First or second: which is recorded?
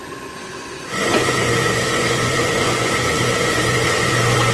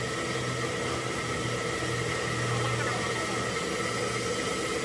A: second